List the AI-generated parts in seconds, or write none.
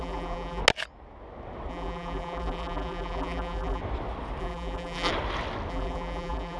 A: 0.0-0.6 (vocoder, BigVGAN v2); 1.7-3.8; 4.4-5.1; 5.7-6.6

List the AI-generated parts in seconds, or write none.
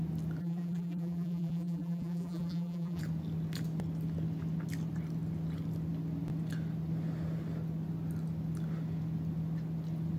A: 0.4-3.0 (vocoder, BigVGAN v2)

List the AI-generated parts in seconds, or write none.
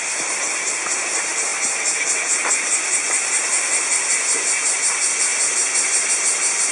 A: 5.3-6.1 (vocoder, BigVGAN v2)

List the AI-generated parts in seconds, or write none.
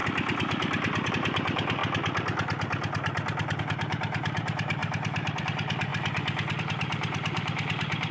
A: 1.1-1.8 (vocoder, BigVGAN v2); 3.6-5.9; 6.6-8.1